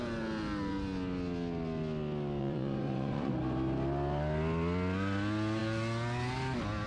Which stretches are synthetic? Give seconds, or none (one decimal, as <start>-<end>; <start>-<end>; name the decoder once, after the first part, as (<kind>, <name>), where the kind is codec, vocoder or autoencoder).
2.4-3.3 (vocoder, Vocos)